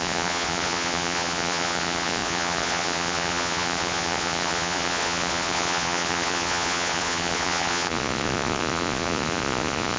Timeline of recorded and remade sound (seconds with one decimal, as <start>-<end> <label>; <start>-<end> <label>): 0.0-10.0 remade